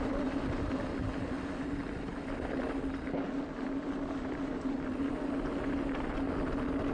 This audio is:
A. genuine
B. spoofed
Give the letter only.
A